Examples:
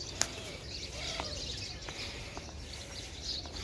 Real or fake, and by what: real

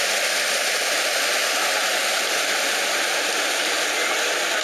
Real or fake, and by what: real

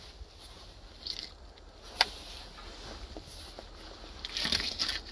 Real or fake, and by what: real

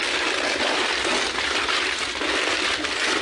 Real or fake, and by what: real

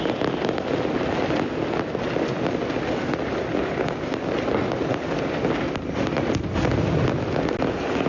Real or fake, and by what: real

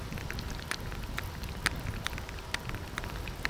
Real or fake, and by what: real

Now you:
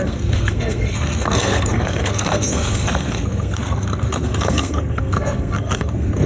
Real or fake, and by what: fake, codec, SNAC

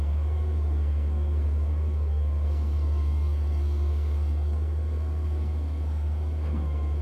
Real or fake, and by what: fake, codec, SNAC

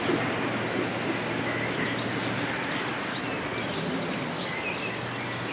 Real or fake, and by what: real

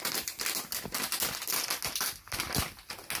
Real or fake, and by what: real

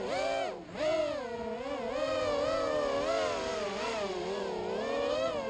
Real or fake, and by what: real